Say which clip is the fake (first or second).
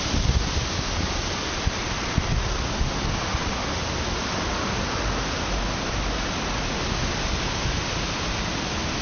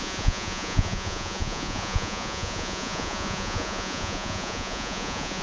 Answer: second